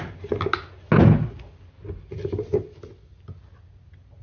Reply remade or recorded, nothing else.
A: recorded